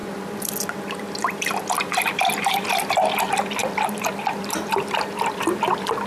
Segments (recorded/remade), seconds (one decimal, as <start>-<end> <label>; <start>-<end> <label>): 0.0-2.9 remade; 2.9-3.6 recorded; 3.6-5.6 remade; 5.6-6.1 recorded